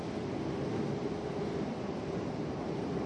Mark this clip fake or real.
real